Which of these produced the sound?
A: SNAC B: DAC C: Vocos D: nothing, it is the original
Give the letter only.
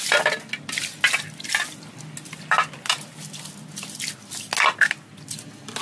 D